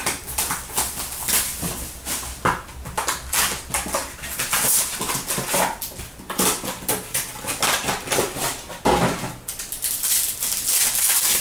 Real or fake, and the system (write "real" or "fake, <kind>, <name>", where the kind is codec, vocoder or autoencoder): real